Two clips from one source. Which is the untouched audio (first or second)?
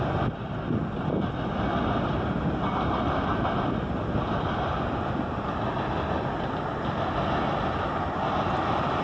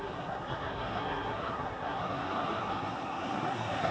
first